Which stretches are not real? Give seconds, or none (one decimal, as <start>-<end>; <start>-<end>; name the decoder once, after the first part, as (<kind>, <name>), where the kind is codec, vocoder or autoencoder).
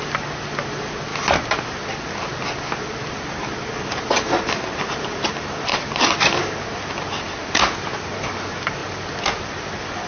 none